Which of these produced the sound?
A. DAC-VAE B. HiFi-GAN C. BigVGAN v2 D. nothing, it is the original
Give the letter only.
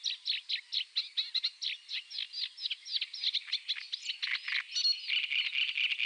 D